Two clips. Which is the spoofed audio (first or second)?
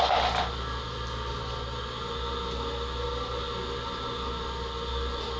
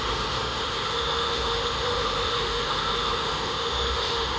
second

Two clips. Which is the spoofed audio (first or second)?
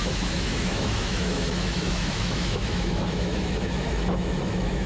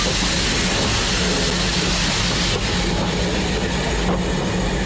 first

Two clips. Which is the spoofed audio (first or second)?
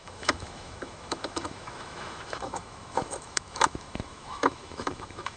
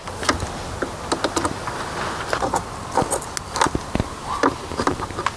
first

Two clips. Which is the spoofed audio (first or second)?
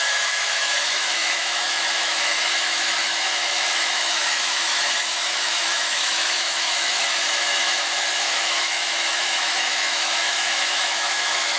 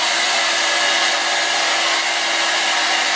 first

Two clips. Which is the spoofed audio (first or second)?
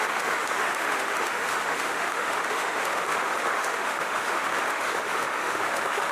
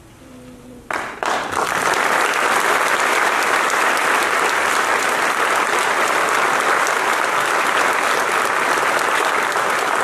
first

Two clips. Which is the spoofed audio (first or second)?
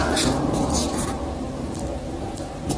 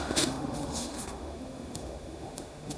second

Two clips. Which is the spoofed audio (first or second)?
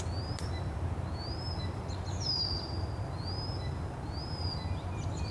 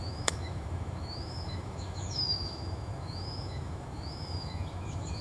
second